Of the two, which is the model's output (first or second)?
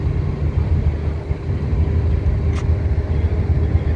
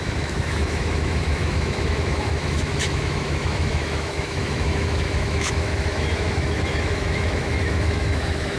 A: second